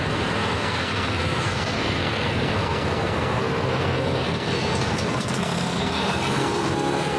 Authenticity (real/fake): fake